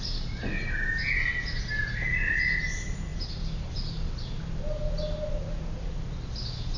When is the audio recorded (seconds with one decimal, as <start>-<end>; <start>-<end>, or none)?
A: 0.0-6.8

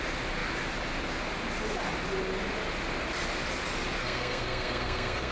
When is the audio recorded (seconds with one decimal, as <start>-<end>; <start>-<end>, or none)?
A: 0.0-4.0